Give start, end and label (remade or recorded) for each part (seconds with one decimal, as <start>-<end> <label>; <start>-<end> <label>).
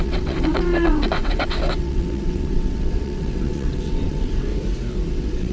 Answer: 0.0-4.5 remade; 4.5-5.1 recorded; 5.1-5.5 remade